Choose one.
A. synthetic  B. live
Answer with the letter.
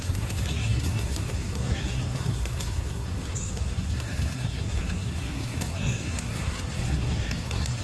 A